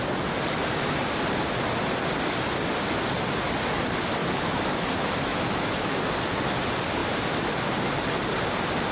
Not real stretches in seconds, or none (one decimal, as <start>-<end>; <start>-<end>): 4.2-6.0